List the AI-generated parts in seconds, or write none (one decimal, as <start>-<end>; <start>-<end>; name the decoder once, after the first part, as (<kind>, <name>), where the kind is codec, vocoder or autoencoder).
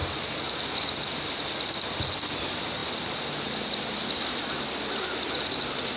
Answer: none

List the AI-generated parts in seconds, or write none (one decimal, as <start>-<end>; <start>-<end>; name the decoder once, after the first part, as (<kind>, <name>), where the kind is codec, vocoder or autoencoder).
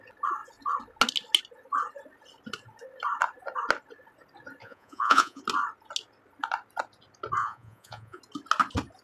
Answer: 4.6-5.4 (vocoder, Vocos); 7.4-8.2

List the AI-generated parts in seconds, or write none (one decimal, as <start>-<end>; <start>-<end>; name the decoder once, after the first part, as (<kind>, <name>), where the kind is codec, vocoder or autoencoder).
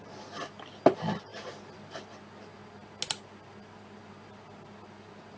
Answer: none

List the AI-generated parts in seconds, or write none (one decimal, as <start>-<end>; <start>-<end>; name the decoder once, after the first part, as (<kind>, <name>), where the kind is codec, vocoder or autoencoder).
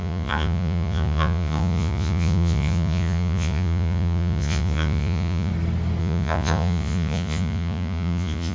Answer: 0.0-5.5 (vocoder, Vocos); 6.0-8.5